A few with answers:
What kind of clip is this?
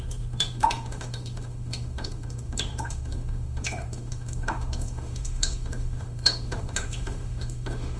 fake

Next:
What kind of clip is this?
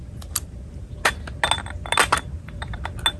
real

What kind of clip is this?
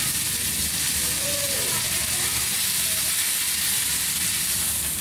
real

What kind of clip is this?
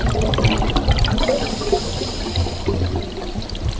real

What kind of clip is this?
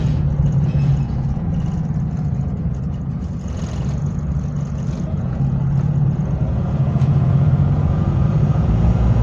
fake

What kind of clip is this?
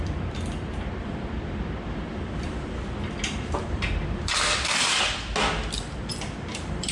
fake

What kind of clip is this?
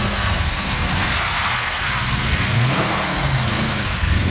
fake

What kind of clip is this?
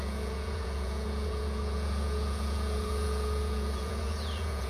fake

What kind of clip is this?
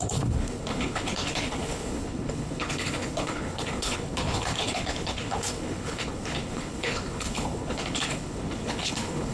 fake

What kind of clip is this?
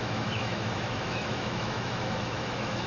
fake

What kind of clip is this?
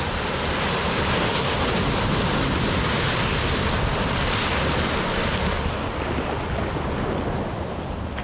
real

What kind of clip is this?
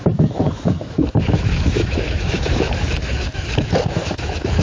fake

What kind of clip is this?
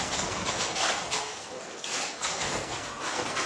fake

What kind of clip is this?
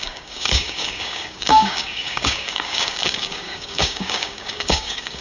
fake